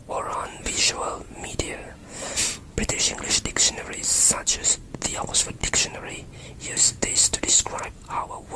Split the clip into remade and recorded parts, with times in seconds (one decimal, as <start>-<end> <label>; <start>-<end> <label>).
0.0-2.4 remade; 2.4-5.1 recorded; 5.1-5.6 remade; 5.6-6.5 recorded; 6.5-8.6 remade